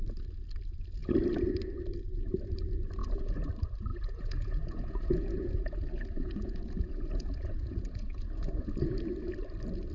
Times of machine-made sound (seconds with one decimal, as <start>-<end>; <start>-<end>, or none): 3.0-3.5; 3.9-8.8